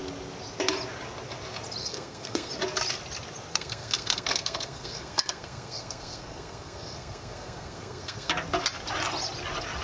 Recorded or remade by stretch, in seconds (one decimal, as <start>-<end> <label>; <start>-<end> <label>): 0.0-1.8 recorded; 1.8-2.5 remade; 2.5-3.5 recorded; 3.5-8.3 remade; 8.3-9.8 recorded